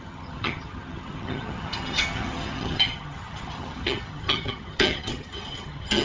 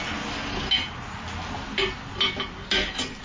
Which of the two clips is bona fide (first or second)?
second